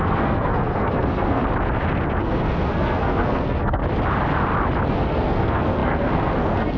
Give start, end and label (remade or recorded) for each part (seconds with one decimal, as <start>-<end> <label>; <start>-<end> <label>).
0.0-1.4 remade; 1.4-2.2 recorded; 2.2-3.8 remade; 3.8-4.9 recorded; 4.9-6.8 remade